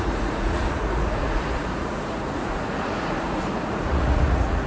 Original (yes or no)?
no